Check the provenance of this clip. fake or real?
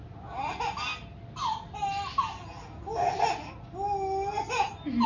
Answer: real